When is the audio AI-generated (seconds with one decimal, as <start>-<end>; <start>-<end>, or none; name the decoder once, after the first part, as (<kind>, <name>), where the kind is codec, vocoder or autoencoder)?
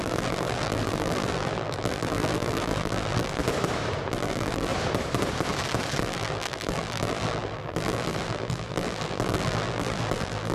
0.0-3.4 (vocoder, BigVGAN v2); 4.1-4.7; 6.0-10.5